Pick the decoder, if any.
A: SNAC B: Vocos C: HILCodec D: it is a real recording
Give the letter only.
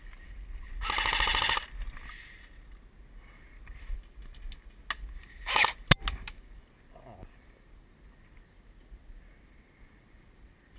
D